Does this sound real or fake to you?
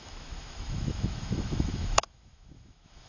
fake